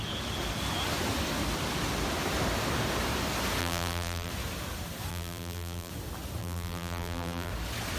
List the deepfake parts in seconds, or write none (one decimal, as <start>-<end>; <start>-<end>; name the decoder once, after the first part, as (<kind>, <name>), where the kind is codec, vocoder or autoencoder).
3.6-4.3 (vocoder, BigVGAN v2); 5.1-5.9; 6.4-7.5